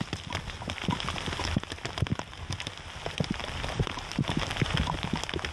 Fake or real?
real